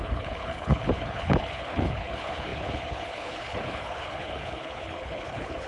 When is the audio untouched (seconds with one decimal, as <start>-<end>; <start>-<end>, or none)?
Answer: none